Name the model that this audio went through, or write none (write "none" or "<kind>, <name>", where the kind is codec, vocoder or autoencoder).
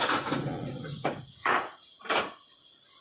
vocoder, Vocos